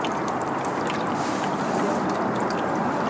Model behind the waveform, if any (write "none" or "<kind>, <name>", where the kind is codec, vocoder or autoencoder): none